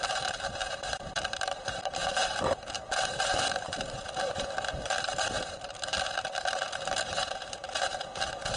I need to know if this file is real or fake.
fake